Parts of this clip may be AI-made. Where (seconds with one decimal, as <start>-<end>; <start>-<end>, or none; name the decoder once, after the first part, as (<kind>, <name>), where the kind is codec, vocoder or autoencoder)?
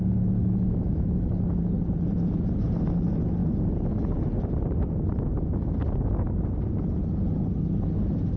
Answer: 0.4-1.3 (autoencoder, DAC-VAE)